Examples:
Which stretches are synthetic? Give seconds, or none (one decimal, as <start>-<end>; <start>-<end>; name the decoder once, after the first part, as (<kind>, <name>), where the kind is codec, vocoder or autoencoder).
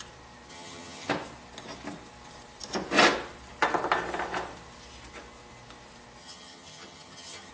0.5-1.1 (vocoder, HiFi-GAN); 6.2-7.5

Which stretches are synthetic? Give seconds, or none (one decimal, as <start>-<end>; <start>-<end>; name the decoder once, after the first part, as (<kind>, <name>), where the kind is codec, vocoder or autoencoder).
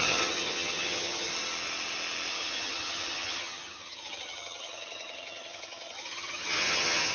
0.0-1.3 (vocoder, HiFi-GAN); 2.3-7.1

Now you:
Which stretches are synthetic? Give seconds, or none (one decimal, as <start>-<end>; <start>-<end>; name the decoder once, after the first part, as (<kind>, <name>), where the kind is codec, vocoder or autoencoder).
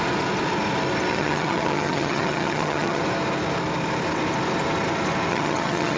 1.1-3.0 (vocoder, HiFi-GAN); 5.3-6.0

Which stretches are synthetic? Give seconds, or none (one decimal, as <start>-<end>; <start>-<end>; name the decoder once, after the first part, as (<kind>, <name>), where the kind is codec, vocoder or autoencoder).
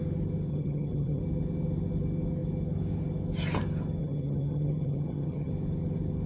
0.5-1.2 (vocoder, HiFi-GAN); 4.0-5.5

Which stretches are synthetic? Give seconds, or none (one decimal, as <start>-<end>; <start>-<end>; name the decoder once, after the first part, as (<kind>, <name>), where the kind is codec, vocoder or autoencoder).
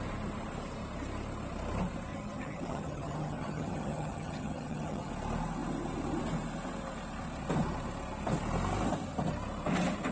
2.1-5.1 (vocoder, HiFi-GAN)